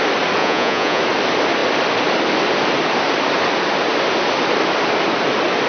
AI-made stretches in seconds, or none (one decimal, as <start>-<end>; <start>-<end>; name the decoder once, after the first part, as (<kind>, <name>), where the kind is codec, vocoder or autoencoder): 0.4-1.0 (vocoder, Vocos)